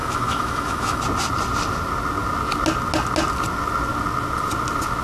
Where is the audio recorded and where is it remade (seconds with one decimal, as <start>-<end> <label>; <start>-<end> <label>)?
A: 0.0-1.0 remade; 1.0-5.0 recorded